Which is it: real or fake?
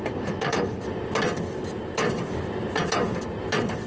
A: real